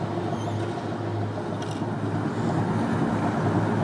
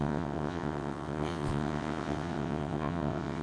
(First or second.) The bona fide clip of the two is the first